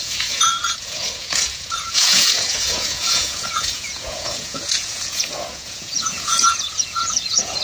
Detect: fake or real fake